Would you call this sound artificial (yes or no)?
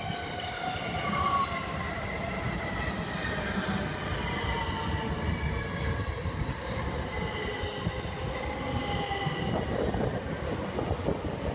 no